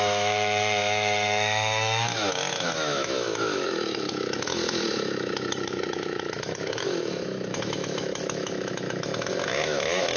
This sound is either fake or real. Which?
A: fake